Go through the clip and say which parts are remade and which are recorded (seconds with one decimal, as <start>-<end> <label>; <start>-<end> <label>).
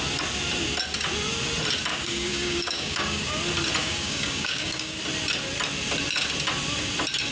0.0-1.9 recorded; 1.9-3.4 remade; 3.4-3.8 recorded; 3.8-5.0 remade; 5.0-7.3 recorded